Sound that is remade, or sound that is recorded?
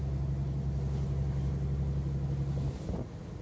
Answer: recorded